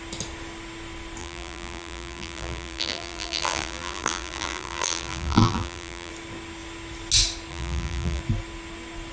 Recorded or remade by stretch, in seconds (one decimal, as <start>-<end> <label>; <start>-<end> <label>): 0.0-1.2 recorded; 1.2-6.1 remade; 6.1-7.5 recorded; 7.5-8.2 remade; 8.2-9.1 recorded

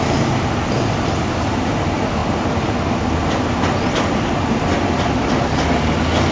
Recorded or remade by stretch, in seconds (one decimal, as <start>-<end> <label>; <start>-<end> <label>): 0.0-6.3 recorded

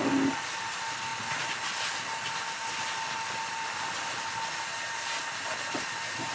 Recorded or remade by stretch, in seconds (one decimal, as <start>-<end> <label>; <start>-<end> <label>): 0.0-6.3 recorded

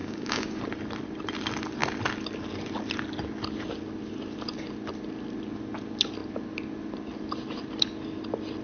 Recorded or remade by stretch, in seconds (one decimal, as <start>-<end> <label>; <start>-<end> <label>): 0.0-0.6 remade; 0.6-8.6 recorded

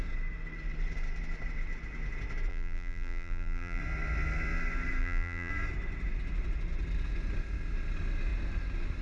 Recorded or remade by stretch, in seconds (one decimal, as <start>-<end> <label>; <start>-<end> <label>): 0.0-2.5 recorded; 2.5-3.8 remade; 3.8-5.0 recorded; 5.0-5.5 remade; 5.5-9.0 recorded